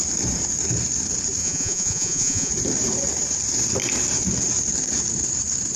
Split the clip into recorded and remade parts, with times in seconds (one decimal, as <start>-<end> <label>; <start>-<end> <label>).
0.0-1.4 recorded; 1.4-2.5 remade; 2.5-5.8 recorded